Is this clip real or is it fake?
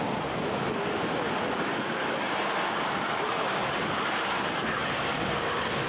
real